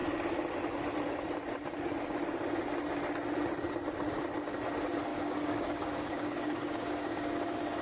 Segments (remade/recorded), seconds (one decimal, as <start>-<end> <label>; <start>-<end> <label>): 0.0-5.1 recorded; 5.1-7.8 remade